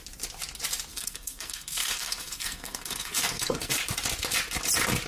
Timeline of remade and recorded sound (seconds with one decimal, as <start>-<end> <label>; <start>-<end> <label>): 0.0-0.9 recorded; 0.9-3.7 remade; 3.7-5.1 recorded